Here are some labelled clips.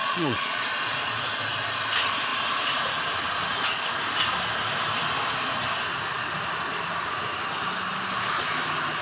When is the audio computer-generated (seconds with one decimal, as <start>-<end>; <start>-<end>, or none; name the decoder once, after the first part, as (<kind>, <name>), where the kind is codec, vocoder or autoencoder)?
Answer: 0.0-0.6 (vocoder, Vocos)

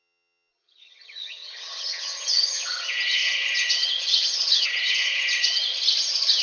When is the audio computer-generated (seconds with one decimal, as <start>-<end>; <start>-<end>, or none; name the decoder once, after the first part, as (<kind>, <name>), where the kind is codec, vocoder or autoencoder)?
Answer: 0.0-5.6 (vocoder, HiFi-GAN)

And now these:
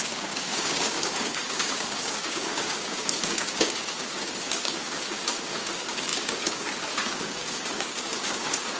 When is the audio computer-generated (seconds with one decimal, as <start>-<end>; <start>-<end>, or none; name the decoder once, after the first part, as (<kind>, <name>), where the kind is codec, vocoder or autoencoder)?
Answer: 0.0-8.8 (codec, DAC)

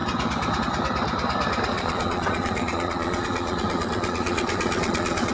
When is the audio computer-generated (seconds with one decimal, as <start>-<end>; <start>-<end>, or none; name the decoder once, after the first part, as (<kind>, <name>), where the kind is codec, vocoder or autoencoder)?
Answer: 1.7-5.3 (vocoder, Vocos)

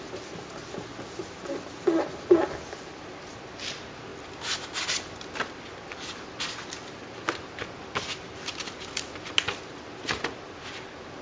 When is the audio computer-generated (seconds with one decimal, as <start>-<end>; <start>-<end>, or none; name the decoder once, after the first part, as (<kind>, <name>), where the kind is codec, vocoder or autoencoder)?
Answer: none

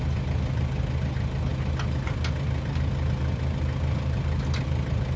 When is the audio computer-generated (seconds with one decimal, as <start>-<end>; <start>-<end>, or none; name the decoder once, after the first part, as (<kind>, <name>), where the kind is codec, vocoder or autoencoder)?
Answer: none

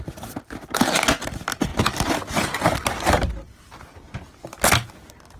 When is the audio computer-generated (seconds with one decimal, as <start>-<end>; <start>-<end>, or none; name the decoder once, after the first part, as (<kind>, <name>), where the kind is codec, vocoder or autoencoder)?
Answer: none

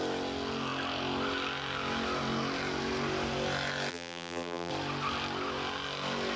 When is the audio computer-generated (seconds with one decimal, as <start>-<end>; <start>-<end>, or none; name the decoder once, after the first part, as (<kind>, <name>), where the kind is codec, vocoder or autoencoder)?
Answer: 3.9-4.7 (vocoder, BigVGAN v2)